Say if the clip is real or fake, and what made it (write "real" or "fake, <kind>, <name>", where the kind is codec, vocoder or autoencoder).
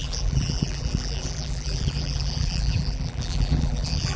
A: fake, vocoder, BigVGAN v2